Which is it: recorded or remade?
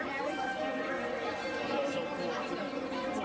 recorded